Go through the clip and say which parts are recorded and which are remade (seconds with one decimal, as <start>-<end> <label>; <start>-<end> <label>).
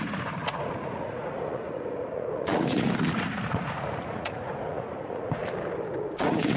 0.0-5.4 remade; 5.4-6.0 recorded; 6.0-6.6 remade